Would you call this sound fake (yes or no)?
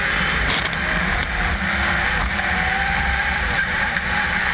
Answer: yes